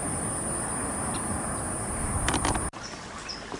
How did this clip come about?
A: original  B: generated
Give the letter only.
A